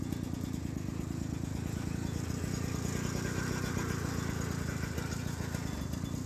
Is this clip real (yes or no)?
yes